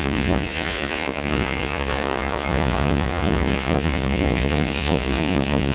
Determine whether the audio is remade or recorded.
remade